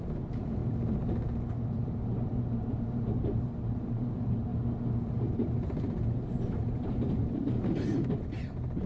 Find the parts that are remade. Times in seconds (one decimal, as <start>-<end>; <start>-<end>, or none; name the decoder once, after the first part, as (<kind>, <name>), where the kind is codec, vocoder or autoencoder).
0.0-0.6 (vocoder, BigVGAN v2); 1.5-4.5; 5.2-8.9